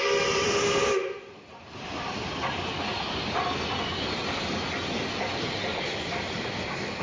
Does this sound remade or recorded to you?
recorded